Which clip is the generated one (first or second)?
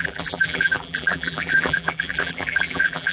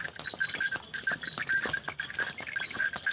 first